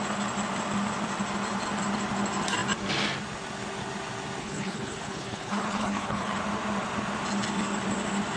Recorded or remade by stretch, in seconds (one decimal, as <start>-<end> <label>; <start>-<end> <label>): 0.0-4.4 recorded; 4.4-6.4 remade; 6.4-8.4 recorded